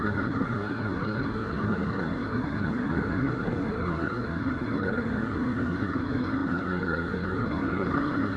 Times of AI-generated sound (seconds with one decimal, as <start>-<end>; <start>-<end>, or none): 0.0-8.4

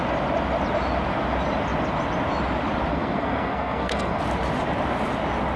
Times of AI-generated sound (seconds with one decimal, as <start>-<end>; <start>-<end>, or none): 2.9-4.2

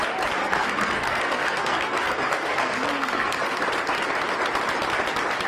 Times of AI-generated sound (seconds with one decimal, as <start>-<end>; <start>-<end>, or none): 0.4-3.6

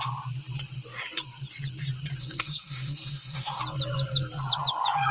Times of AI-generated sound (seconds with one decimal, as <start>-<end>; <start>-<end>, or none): 2.2-3.6

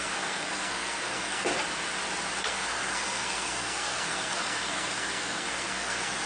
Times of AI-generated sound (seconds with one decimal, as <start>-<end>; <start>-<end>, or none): 0.0-1.5; 2.4-6.3

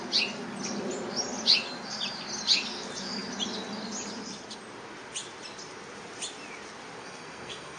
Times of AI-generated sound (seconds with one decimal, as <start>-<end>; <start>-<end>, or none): 7.0-7.8